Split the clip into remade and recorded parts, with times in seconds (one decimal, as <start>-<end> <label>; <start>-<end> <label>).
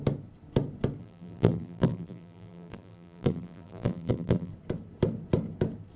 0.0-1.0 recorded; 1.0-4.5 remade; 4.5-6.0 recorded